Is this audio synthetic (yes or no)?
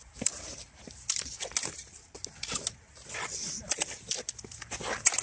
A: no